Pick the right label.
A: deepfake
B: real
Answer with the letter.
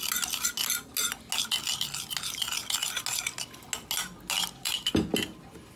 B